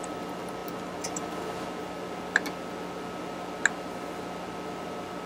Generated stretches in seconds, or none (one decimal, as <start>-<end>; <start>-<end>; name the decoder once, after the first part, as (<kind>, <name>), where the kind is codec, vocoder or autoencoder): none

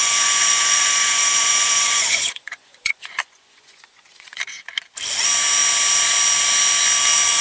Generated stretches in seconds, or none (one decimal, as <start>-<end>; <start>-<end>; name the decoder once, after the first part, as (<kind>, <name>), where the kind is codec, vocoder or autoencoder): 0.0-4.4 (vocoder, Vocos)

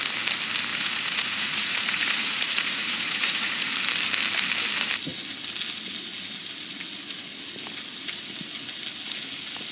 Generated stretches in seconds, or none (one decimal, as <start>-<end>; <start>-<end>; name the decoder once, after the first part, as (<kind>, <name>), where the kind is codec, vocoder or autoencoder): 0.7-3.7 (vocoder, Vocos)

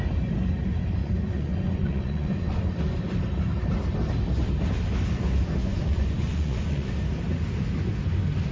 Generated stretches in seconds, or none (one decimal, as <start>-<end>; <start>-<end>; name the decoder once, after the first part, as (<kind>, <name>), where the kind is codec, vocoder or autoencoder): 1.0-2.6 (vocoder, Vocos); 5.6-6.9

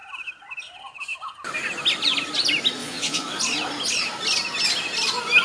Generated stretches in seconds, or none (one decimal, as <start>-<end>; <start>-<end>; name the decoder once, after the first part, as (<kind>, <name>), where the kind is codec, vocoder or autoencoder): 2.8-3.4 (vocoder, Vocos)